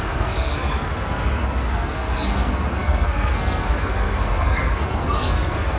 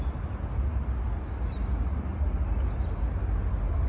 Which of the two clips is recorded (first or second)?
second